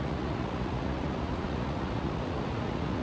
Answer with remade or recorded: remade